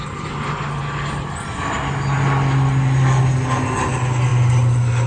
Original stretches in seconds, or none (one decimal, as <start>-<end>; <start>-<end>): 0.0-5.1